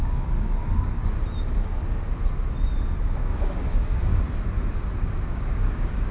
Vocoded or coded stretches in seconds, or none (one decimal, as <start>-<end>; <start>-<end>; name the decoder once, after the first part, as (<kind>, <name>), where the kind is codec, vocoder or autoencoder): 0.0-1.0 (codec, DAC); 3.0-4.1; 5.3-6.1